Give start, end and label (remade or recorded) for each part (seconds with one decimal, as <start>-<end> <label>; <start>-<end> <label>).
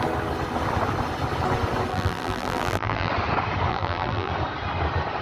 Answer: 0.0-1.9 recorded; 1.9-3.1 remade; 3.1-3.7 recorded; 3.7-4.3 remade; 4.3-5.2 recorded